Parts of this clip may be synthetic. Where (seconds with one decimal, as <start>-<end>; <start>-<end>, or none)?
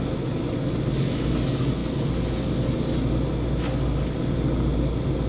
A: none